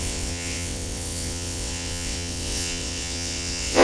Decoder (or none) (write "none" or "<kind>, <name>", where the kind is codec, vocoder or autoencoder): vocoder, WaveNeXt